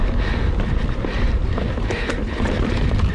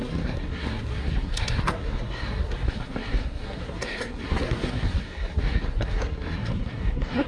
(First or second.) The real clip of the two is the first